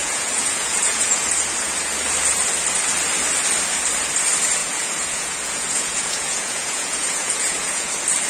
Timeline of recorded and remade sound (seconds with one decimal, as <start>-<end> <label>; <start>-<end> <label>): 0.0-1.3 remade; 1.3-4.6 recorded; 4.6-7.9 remade; 7.9-8.3 recorded

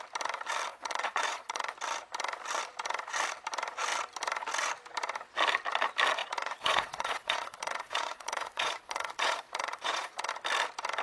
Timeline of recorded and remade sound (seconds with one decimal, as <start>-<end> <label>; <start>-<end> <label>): 0.0-0.7 recorded; 0.7-1.7 remade; 1.7-6.2 recorded; 6.2-10.3 remade; 10.3-11.0 recorded

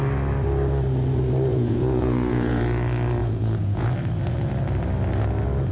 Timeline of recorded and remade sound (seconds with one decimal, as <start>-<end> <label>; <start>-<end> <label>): 0.0-1.5 recorded; 1.5-2.6 remade; 2.6-3.2 recorded; 3.2-3.9 remade; 3.9-5.7 recorded

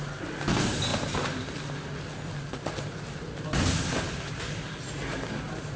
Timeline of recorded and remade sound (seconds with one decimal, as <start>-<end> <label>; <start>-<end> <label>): 0.0-5.8 recorded

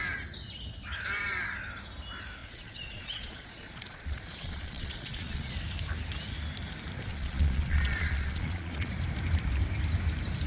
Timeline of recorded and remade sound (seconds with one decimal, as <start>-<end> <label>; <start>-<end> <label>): 0.0-2.4 recorded; 2.4-5.5 remade; 5.5-7.1 recorded; 7.1-8.9 remade; 8.9-10.5 recorded

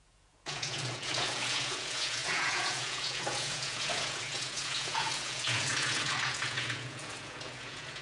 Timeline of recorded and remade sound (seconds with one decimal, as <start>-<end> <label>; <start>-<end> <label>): 0.0-8.0 remade